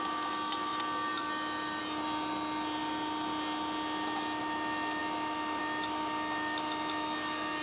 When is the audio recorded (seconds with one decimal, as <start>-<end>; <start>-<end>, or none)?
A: 0.0-7.6